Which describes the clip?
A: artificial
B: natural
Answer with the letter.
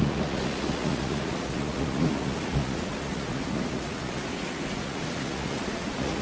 A